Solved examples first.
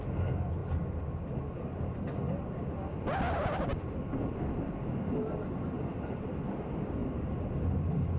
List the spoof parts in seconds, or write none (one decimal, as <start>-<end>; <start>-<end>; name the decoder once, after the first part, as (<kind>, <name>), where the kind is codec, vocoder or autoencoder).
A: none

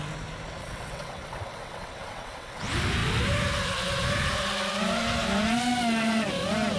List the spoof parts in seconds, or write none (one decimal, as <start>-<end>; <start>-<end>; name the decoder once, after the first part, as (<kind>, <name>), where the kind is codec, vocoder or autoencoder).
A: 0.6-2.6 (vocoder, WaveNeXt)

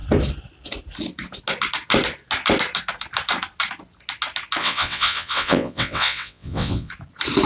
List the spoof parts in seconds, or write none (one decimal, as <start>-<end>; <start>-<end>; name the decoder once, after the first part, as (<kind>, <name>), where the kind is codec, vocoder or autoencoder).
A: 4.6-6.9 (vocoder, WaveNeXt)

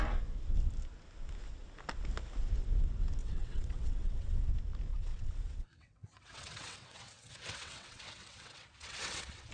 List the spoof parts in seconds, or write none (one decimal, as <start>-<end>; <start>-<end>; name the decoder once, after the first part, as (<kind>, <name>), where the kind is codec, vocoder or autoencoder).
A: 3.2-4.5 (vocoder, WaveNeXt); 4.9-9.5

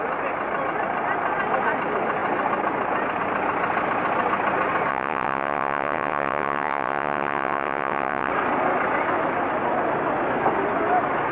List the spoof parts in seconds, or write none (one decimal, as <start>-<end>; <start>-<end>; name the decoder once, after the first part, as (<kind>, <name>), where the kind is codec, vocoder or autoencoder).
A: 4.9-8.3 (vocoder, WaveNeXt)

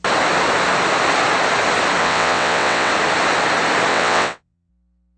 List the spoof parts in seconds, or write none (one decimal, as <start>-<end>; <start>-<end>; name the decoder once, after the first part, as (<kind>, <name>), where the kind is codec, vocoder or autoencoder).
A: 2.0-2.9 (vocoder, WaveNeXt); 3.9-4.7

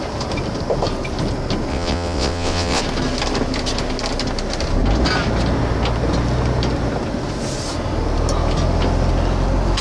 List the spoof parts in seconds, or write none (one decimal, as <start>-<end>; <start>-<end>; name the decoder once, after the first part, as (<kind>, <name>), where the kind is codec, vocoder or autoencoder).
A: 1.7-2.8 (vocoder, WaveNeXt)